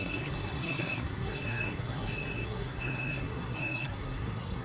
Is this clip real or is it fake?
fake